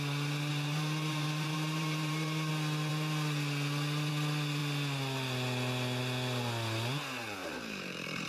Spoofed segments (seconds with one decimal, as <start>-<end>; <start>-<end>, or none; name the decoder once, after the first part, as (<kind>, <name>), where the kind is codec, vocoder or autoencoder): 0.5-2.5 (vocoder, BigVGAN v2); 7.4-8.3